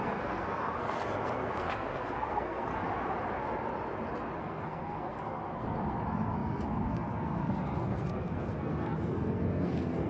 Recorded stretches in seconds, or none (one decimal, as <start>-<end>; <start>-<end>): 2.7-4.4

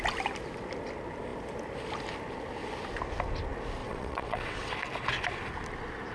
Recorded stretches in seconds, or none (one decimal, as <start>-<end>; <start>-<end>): 0.0-3.8; 4.7-6.1

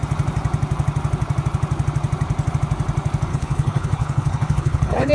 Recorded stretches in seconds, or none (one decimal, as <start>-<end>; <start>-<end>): 0.0-3.3

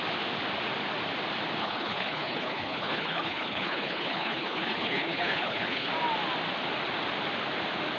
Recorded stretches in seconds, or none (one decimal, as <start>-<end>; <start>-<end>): 0.0-1.6; 5.9-8.0

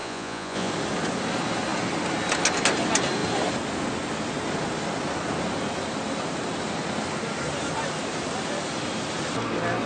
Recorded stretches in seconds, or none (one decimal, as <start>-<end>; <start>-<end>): 0.7-9.9

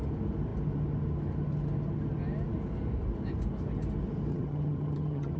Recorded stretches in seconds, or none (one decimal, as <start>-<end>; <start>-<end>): 0.0-4.3

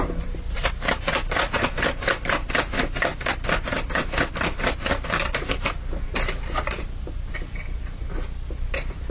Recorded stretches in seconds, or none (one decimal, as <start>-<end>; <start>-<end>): 0.0-9.1

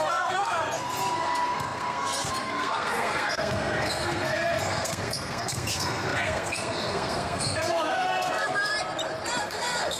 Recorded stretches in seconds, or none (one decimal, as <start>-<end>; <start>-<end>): 8.7-9.4